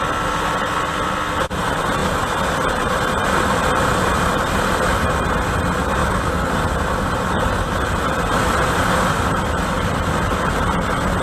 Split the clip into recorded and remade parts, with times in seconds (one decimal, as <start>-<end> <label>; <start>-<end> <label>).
0.0-6.0 recorded; 6.0-6.5 remade; 6.5-11.2 recorded